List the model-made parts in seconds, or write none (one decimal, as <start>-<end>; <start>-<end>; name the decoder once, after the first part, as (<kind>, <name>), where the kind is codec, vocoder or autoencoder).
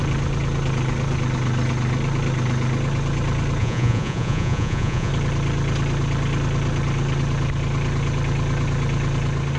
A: 3.6-5.1 (vocoder, Vocos)